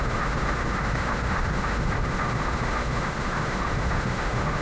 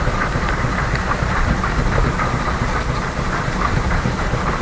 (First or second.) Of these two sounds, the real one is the second